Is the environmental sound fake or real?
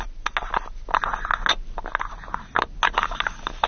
real